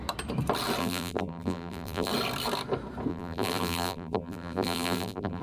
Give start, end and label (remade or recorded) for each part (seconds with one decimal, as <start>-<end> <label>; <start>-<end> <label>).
0.0-0.8 recorded; 0.8-2.1 remade; 2.1-3.1 recorded; 3.1-5.4 remade